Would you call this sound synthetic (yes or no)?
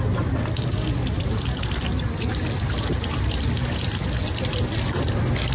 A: no